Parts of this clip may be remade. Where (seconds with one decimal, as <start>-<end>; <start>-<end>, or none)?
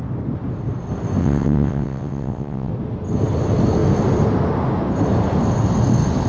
1.2-2.7